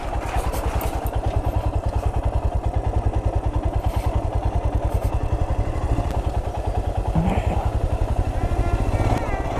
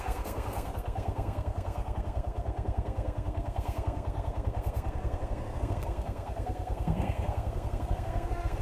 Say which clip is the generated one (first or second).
second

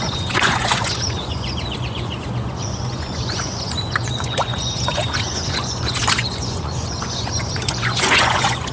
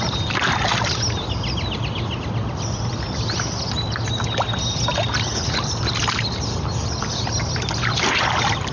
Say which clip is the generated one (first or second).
first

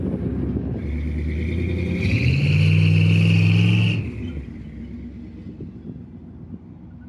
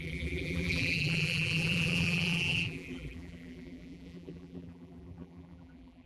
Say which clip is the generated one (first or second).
second